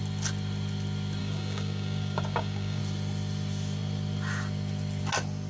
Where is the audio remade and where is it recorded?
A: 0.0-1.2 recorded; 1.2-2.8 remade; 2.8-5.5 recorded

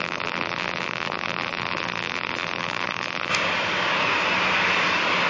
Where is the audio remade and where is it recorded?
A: 0.0-3.3 remade; 3.3-5.3 recorded

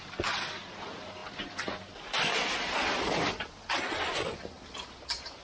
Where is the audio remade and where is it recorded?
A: 0.0-5.4 recorded

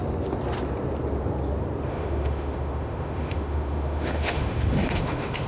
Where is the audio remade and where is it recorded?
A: 0.0-1.9 recorded; 1.9-5.5 remade

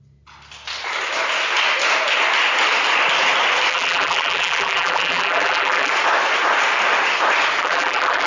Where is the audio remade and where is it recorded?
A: 0.0-3.7 recorded; 3.7-5.9 remade; 5.9-7.6 recorded; 7.6-8.3 remade

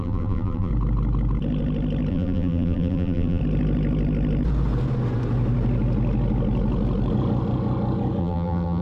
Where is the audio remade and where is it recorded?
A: 0.0-0.7 remade; 0.7-2.1 recorded; 2.1-3.4 remade; 3.4-8.2 recorded; 8.2-8.8 remade